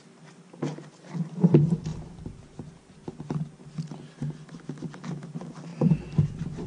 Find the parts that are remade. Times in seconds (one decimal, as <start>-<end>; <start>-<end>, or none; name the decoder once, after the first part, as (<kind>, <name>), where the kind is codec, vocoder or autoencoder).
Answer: none

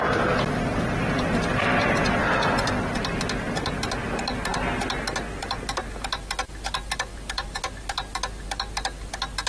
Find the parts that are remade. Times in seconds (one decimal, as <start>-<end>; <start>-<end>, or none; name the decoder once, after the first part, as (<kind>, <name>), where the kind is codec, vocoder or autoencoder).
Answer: 1.0-2.2 (vocoder, BigVGAN v2); 7.1-7.7